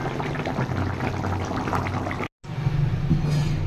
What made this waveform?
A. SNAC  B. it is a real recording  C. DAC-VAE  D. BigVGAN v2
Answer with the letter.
B